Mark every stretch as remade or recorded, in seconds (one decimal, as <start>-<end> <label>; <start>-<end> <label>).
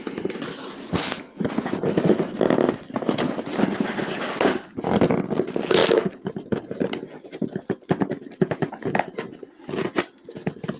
0.0-10.8 recorded